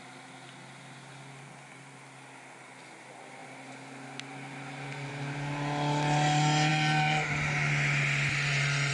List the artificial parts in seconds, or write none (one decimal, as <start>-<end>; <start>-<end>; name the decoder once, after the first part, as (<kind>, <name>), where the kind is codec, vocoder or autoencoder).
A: none